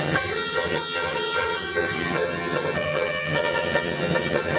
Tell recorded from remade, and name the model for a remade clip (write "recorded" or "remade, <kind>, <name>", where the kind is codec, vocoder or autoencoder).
remade, vocoder, HiFi-GAN